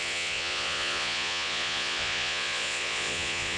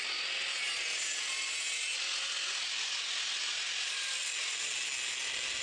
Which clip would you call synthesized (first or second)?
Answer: first